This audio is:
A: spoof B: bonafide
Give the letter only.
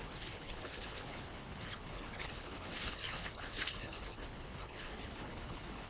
A